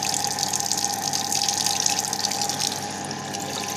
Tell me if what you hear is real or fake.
real